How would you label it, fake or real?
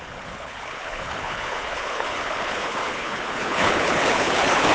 fake